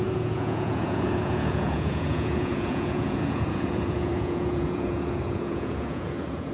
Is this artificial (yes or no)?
yes